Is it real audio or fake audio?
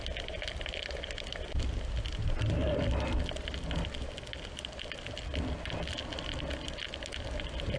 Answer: real